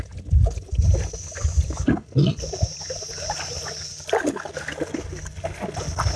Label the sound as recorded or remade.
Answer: recorded